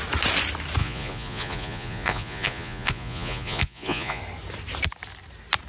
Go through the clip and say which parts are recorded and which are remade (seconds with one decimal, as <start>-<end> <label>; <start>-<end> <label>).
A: 0.0-0.8 recorded; 0.8-4.2 remade; 4.2-5.7 recorded